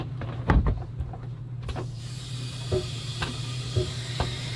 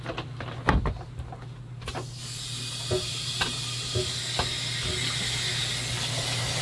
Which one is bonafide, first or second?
second